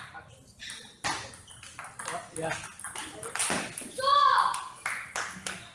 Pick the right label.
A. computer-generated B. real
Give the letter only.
B